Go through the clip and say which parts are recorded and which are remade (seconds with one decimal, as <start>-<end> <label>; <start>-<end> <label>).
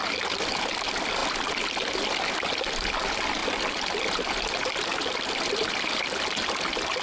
0.0-7.0 recorded